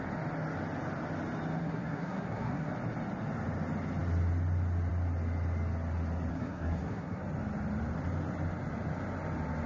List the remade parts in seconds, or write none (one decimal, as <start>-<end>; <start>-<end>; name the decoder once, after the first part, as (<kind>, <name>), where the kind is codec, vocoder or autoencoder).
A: 1.6-2.7 (codec, SNAC); 6.3-7.2